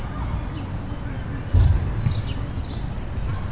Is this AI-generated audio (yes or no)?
no